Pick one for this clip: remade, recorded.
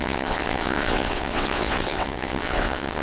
remade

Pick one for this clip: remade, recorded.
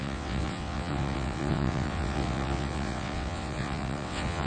remade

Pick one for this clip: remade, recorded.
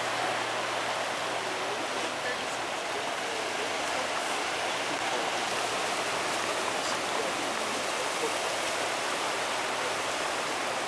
recorded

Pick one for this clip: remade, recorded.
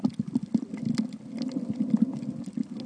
recorded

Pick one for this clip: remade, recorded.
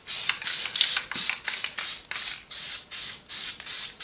recorded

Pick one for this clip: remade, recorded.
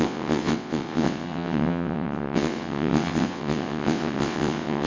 remade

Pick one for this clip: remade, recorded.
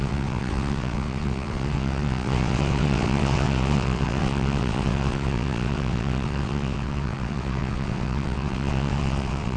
remade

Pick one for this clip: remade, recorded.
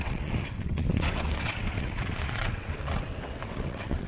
remade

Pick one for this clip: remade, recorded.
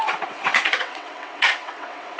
remade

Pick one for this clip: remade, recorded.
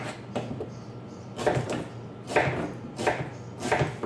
recorded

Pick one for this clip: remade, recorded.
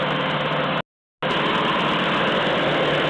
recorded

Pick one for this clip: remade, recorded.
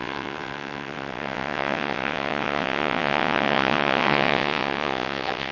remade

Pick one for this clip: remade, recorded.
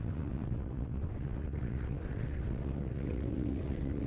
remade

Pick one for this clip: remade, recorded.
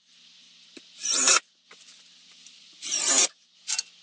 recorded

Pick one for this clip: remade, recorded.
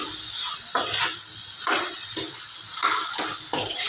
recorded